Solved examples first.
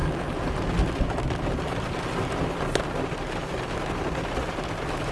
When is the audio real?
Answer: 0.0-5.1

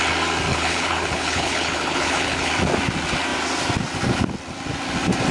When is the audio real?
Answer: 0.0-0.5; 2.5-5.3

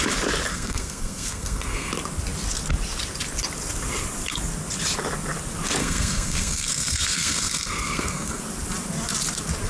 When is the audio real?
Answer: 0.0-0.5; 1.9-5.8; 8.4-9.7

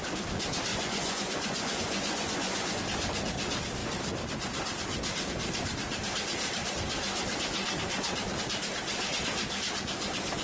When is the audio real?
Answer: 0.0-0.7; 2.8-10.4

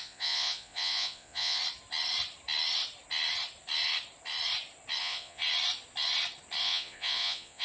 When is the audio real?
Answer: 1.6-5.0; 5.4-6.6

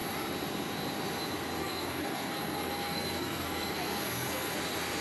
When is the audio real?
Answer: 0.0-1.6; 4.6-5.0